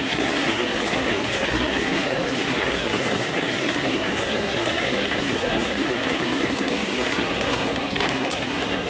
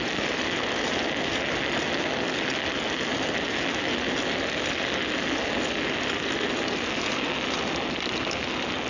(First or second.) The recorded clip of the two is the second